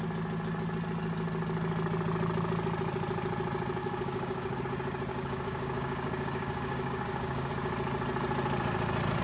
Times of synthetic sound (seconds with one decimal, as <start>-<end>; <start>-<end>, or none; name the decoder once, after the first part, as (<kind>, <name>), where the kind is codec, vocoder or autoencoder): 3.8-4.6 (codec, DAC); 5.1-7.5